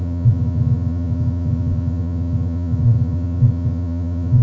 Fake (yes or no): yes